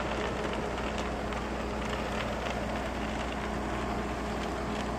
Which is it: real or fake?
real